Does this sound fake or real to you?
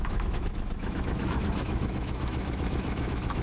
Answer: fake